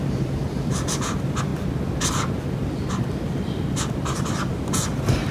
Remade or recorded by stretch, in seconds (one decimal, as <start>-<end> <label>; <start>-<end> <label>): 0.0-1.5 remade; 1.5-4.5 recorded; 4.5-5.3 remade